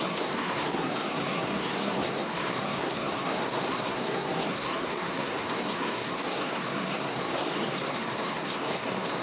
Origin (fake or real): fake